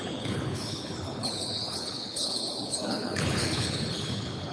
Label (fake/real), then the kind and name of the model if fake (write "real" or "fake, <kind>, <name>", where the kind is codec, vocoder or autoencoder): fake, codec, HILCodec